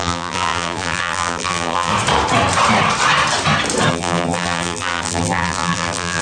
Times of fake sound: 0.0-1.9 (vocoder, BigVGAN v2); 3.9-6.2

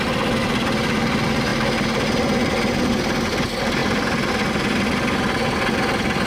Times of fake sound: none

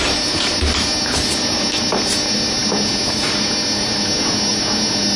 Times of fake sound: 0.0-5.2 (vocoder, BigVGAN v2)

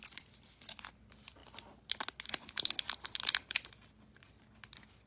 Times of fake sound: none

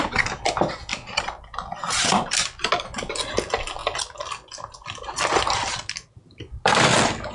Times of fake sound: none